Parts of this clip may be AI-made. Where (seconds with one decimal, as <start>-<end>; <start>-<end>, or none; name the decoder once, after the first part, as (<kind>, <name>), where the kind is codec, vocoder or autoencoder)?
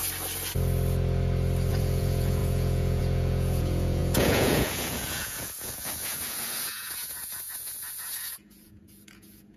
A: 1.7-9.6 (vocoder, Vocos)